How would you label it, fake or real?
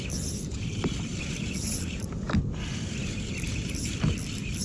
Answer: fake